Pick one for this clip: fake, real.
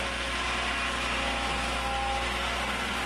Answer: real